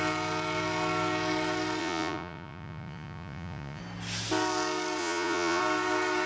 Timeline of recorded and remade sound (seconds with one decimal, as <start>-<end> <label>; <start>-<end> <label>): 0.0-1.8 recorded; 1.8-3.8 remade; 3.8-5.0 recorded; 5.0-5.6 remade; 5.6-6.3 recorded